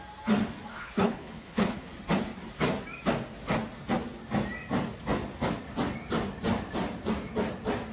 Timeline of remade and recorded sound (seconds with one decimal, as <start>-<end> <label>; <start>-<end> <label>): 0.0-0.7 recorded; 0.7-1.9 remade; 1.9-7.9 recorded